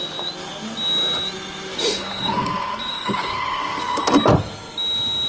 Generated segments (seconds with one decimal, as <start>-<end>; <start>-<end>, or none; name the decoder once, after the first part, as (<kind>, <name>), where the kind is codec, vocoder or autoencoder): 1.7-4.0 (codec, DAC)